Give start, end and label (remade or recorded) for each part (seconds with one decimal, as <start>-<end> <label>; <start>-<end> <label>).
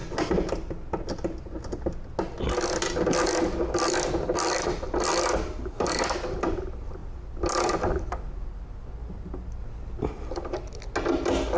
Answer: 0.0-11.6 recorded